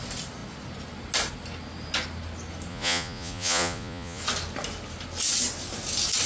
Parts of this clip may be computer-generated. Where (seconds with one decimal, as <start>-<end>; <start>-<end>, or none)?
2.7-4.2